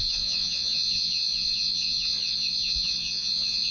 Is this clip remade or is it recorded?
remade